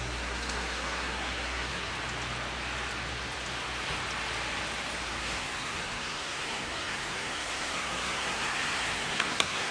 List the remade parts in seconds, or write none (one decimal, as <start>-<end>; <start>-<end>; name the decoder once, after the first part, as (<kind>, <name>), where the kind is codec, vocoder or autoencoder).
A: 0.0-1.9 (codec, SNAC); 5.2-9.7